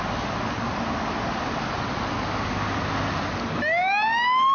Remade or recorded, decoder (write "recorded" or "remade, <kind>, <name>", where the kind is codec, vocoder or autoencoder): recorded